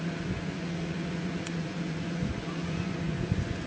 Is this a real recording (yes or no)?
no